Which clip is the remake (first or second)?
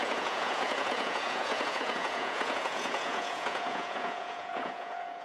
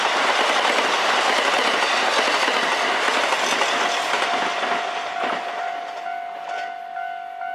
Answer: first